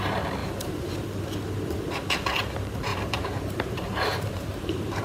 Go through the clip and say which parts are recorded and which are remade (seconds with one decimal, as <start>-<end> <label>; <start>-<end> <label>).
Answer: 0.0-0.4 recorded; 0.4-0.9 remade; 0.9-2.9 recorded; 2.9-5.0 remade